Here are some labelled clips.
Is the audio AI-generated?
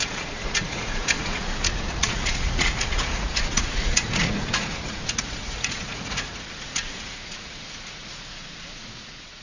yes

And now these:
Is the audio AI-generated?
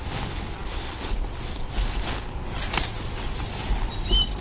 no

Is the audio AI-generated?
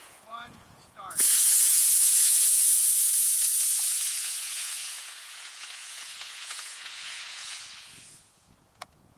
yes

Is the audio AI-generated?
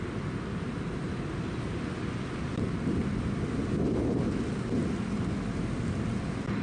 no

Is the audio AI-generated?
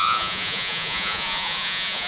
yes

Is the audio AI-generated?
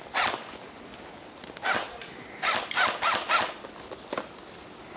no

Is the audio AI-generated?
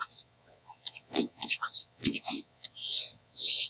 yes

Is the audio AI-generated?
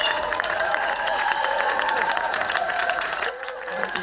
yes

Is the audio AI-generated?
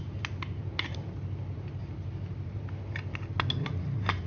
no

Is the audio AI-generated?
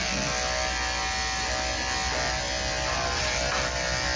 no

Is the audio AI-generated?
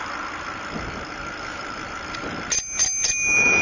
no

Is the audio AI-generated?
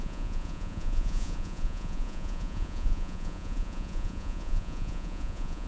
yes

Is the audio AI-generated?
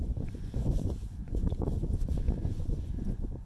yes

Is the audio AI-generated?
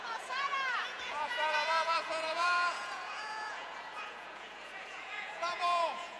yes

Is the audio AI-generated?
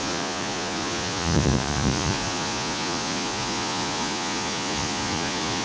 yes